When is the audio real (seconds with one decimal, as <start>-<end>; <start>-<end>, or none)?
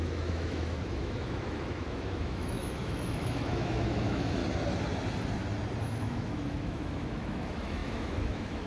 4.4-5.8